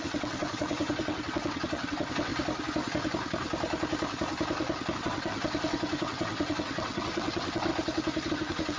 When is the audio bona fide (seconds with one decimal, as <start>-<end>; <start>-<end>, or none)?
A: 2.3-5.0; 7.7-8.3